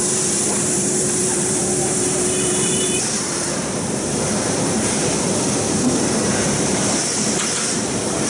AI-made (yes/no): yes